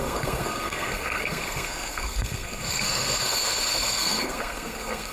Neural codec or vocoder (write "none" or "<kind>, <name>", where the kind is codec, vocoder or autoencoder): codec, SNAC